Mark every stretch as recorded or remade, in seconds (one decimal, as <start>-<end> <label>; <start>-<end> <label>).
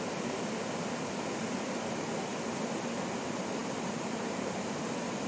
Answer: 0.0-5.3 recorded